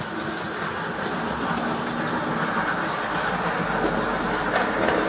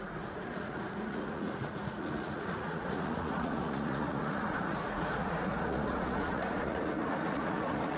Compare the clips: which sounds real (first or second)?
first